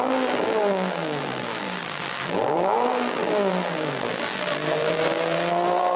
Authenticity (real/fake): fake